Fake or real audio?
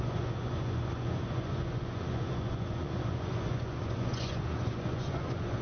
fake